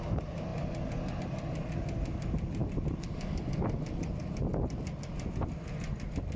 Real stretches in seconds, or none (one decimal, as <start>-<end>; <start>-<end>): 0.0-6.4